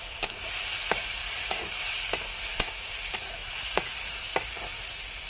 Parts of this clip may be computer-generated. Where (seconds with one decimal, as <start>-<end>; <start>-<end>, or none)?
1.2-1.7; 3.4-4.2